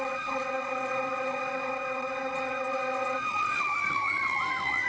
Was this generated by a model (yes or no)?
yes